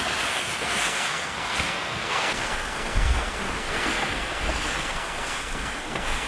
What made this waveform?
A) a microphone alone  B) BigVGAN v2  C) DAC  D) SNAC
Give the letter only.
D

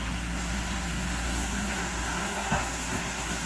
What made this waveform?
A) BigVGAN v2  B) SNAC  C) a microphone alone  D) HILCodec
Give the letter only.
B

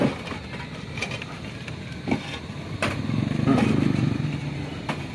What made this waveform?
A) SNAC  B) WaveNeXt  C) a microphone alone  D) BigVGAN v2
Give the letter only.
C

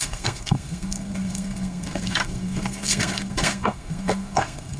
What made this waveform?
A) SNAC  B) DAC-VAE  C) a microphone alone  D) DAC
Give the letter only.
A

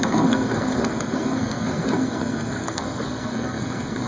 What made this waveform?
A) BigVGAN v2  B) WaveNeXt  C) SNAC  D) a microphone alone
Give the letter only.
C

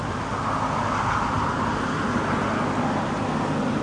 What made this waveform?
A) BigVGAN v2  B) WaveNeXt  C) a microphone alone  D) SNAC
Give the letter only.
C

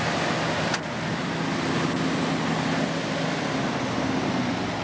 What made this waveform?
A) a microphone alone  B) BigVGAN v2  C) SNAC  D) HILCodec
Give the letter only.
A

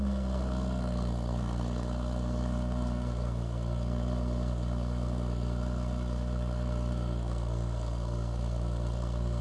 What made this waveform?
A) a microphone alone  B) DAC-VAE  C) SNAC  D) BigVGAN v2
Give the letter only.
C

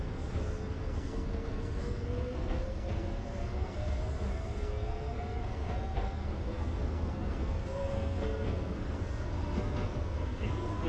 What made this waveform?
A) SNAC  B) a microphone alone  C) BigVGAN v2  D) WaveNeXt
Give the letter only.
A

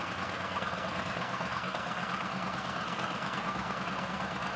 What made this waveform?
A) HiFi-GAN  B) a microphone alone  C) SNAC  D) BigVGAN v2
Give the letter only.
C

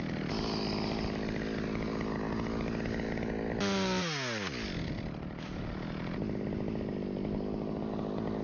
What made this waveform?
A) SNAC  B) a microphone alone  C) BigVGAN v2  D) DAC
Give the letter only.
B